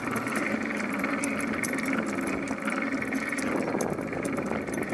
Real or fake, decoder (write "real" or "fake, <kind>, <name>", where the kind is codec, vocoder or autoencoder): real